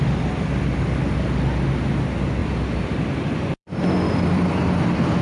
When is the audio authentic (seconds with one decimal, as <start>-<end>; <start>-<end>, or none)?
0.0-2.4; 4.7-5.2